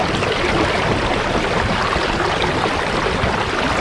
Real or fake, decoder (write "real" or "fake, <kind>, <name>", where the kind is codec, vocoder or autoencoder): real